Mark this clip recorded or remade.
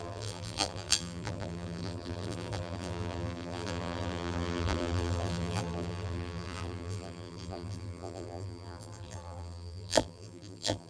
remade